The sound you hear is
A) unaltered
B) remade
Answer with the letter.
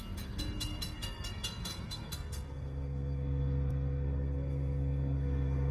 B